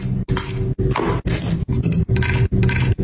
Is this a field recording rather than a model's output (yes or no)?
yes